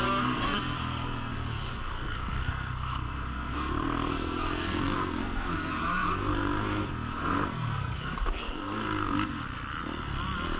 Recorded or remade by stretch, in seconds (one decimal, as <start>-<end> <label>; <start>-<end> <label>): 0.0-9.4 remade; 9.4-10.6 recorded